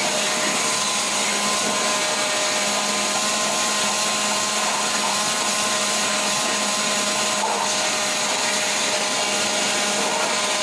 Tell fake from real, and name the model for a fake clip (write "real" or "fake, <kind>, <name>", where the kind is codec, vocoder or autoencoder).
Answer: real